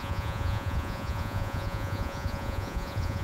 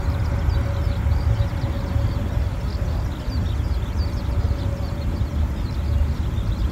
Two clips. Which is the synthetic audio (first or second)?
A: first